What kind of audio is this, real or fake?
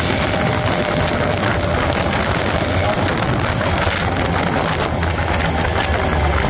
real